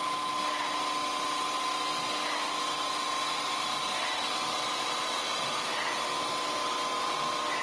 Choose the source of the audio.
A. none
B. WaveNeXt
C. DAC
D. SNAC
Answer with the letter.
A